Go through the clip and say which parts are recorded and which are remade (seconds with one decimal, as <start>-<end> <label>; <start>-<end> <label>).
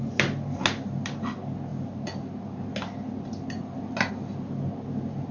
0.0-5.3 recorded